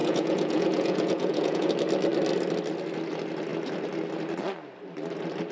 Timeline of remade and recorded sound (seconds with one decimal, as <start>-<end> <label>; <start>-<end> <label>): 0.0-1.7 remade; 1.7-5.5 recorded